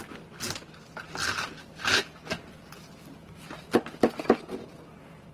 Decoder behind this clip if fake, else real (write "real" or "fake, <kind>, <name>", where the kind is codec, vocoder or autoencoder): real